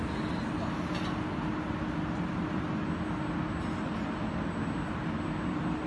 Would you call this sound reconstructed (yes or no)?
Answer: no